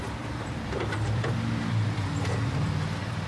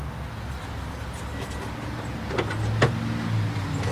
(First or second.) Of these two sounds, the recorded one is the second